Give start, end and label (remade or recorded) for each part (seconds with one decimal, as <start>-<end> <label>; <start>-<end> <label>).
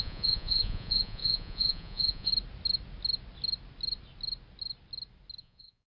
0.0-2.3 remade; 2.3-5.4 recorded; 5.4-5.9 remade